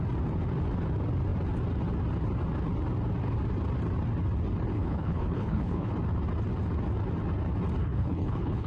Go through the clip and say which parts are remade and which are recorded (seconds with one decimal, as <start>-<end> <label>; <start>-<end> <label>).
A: 0.0-4.7 recorded; 4.7-5.9 remade; 5.9-7.8 recorded; 7.8-8.7 remade